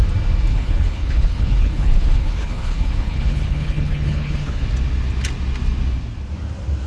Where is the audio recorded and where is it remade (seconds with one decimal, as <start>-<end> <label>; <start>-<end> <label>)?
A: 0.0-0.5 recorded; 0.5-4.6 remade; 4.6-6.9 recorded